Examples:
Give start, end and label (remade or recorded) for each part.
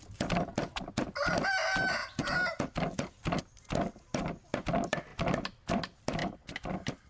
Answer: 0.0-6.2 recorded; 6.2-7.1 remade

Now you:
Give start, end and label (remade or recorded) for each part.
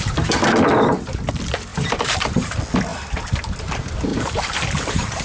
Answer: 0.0-1.7 recorded; 1.7-2.5 remade; 2.5-4.1 recorded; 4.1-5.2 remade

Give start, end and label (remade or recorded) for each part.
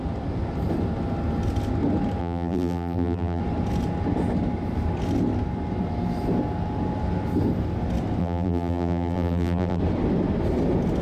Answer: 0.0-2.2 recorded; 2.2-3.4 remade; 3.4-8.2 recorded; 8.2-9.8 remade; 9.8-11.0 recorded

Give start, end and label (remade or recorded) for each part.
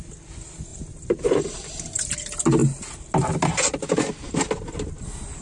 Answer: 0.0-0.7 recorded; 0.7-2.1 remade; 2.1-5.4 recorded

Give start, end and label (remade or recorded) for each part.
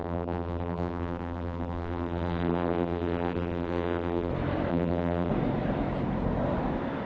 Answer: 0.0-4.3 remade; 4.3-4.7 recorded; 4.7-5.3 remade; 5.3-7.1 recorded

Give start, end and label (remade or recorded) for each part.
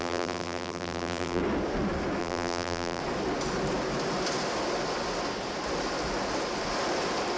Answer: 0.0-1.4 remade; 1.4-2.2 recorded; 2.2-3.0 remade; 3.0-7.4 recorded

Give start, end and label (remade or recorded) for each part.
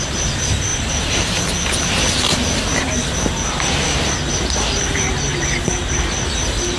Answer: 0.0-0.7 recorded; 0.7-1.4 remade; 1.4-6.8 recorded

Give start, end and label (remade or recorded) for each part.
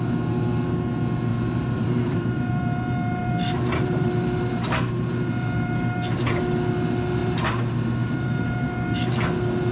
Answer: 0.0-1.3 recorded; 1.3-6.4 remade; 6.4-7.2 recorded; 7.2-9.1 remade; 9.1-9.7 recorded